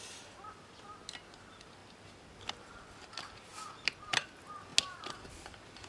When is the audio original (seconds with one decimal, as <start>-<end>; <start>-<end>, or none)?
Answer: 0.0-5.9